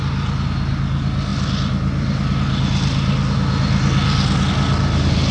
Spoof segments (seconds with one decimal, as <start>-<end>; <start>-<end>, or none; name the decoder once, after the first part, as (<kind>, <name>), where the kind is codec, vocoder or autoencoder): none